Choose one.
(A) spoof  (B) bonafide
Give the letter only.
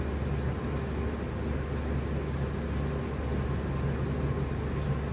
B